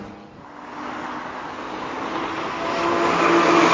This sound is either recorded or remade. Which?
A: recorded